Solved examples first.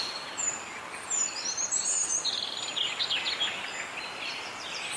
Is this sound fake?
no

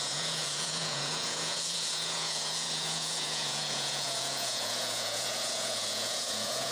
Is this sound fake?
yes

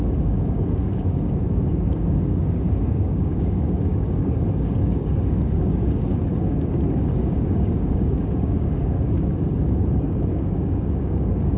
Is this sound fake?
yes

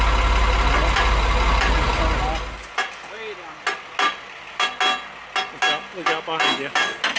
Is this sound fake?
no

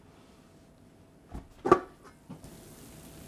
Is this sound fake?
no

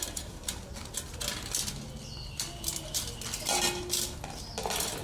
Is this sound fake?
no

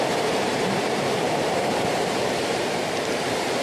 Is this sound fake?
yes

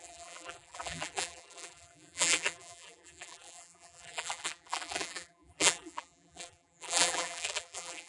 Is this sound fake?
yes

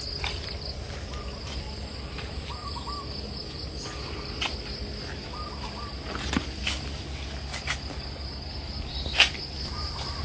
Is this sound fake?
no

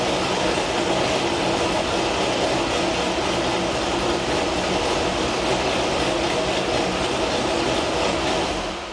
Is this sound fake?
no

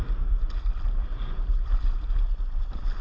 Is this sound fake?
no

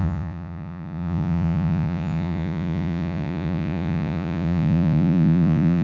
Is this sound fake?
yes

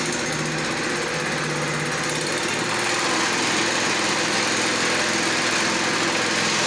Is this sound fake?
no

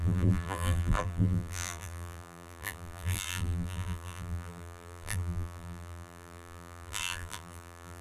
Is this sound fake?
yes